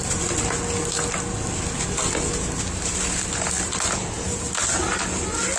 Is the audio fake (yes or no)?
no